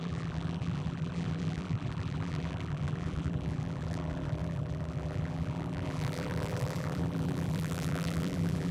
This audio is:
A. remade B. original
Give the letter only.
A